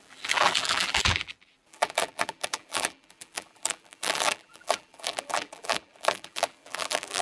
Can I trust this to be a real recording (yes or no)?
no